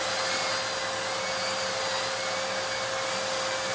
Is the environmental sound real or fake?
real